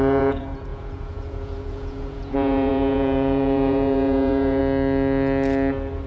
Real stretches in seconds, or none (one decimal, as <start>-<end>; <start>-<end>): 4.6-6.1

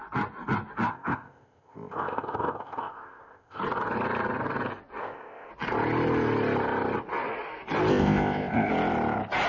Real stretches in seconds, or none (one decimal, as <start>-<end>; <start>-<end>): 0.0-0.9; 3.6-5.0; 5.5-7.9; 8.7-9.5

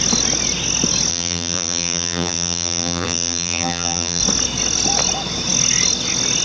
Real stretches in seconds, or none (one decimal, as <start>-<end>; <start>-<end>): 0.0-1.1; 4.2-6.4

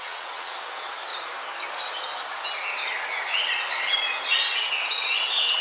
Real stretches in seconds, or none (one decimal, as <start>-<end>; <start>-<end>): 1.1-4.5